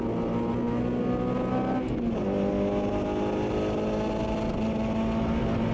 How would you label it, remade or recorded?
recorded